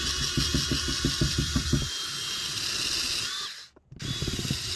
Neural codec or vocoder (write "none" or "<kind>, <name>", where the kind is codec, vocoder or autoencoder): none